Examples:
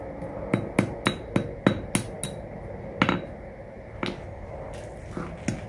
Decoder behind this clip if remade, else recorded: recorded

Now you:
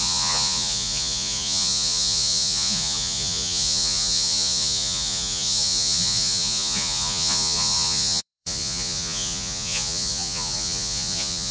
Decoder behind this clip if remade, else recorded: remade, vocoder, Vocos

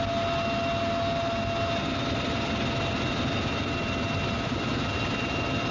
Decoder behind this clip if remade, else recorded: recorded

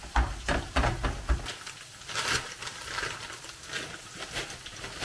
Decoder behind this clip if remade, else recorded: recorded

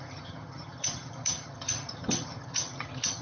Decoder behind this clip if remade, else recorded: remade, vocoder, HiFi-GAN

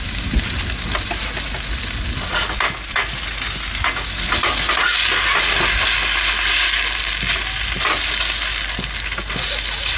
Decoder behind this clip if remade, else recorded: recorded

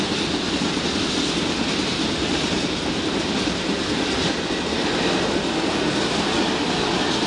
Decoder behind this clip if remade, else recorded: recorded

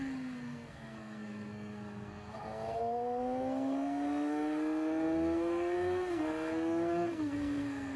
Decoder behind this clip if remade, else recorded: remade, codec, SNAC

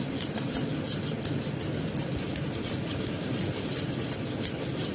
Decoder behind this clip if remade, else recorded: recorded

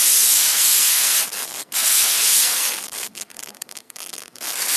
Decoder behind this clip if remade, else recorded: remade, codec, SNAC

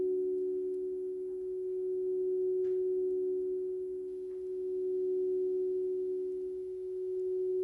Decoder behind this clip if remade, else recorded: recorded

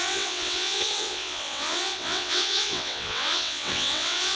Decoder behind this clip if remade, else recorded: remade, vocoder, WaveNeXt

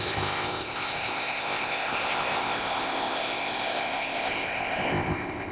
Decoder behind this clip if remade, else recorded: remade, codec, ZipCodec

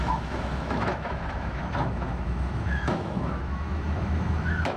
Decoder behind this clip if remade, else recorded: remade, autoencoder, DAC-VAE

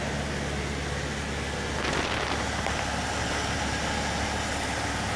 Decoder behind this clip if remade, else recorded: recorded